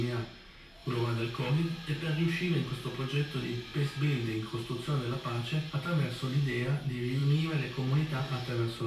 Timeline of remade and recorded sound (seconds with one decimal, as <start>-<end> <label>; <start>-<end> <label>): 0.0-8.9 recorded